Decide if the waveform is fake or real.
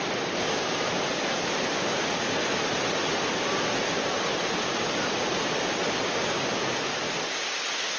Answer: real